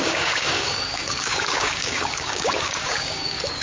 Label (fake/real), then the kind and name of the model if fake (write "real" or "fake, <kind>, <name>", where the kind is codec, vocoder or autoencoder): fake, codec, DAC